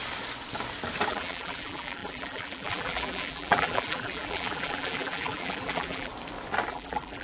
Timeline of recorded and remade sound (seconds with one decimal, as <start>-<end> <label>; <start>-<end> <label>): 0.0-1.1 recorded; 1.1-6.1 remade; 6.1-6.7 recorded; 6.7-7.2 remade